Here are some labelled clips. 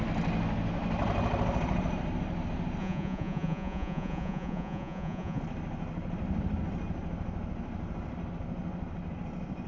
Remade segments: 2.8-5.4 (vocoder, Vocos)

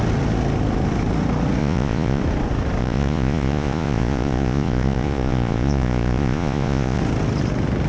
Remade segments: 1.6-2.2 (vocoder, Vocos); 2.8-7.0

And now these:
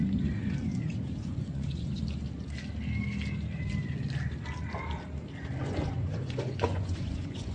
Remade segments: 0.0-2.0 (vocoder, Vocos); 5.6-7.5

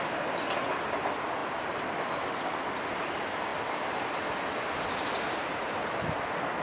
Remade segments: none

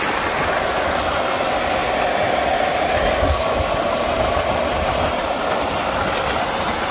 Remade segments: none